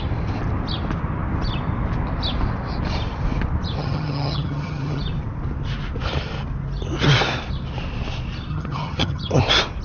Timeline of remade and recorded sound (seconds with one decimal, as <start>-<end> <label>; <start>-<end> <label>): 0.0-3.8 recorded; 3.8-5.0 remade; 5.0-8.5 recorded; 8.5-9.4 remade; 9.4-9.8 recorded